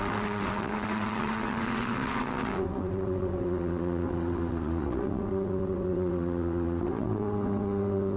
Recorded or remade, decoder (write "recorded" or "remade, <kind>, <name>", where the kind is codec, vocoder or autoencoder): remade, vocoder, WaveNeXt